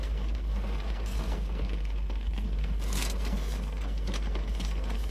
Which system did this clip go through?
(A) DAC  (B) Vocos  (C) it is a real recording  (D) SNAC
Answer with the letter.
D